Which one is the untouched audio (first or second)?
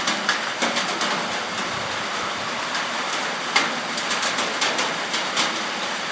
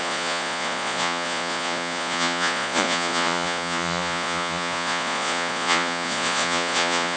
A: first